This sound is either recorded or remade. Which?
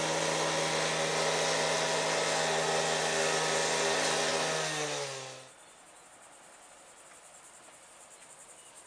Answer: recorded